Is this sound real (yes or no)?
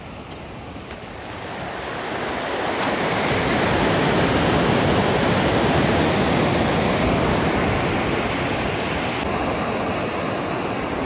yes